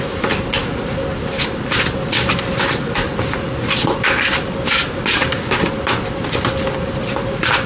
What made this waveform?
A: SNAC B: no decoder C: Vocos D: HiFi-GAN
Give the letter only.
B